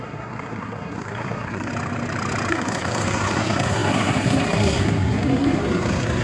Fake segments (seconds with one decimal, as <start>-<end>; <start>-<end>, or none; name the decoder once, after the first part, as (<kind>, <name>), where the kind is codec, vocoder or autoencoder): 0.0-1.7 (codec, SNAC); 2.5-6.2